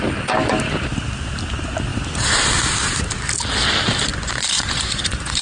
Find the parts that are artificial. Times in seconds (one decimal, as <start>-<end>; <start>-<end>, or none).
4.1-5.4